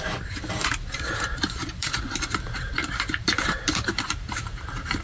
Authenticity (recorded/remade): remade